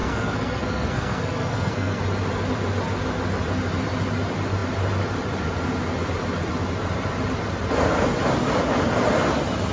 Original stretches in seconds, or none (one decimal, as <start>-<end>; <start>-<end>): 2.0-9.7